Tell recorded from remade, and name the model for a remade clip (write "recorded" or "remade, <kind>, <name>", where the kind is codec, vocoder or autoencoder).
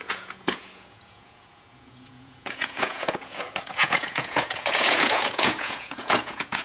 remade, vocoder, Vocos